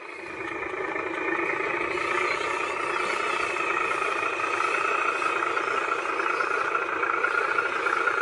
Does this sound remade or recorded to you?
recorded